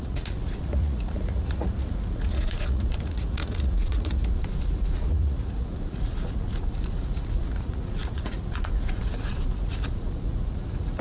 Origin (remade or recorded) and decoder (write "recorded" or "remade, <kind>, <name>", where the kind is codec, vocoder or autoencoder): remade, vocoder, Vocos